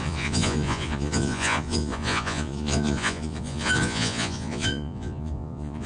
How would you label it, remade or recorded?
remade